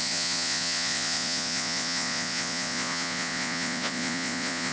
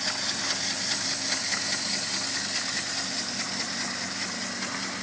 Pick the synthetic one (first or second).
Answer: first